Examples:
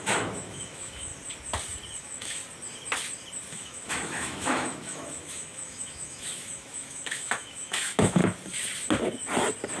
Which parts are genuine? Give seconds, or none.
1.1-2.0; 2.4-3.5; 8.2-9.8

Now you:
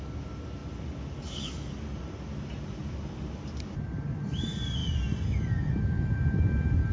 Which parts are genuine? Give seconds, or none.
0.0-6.9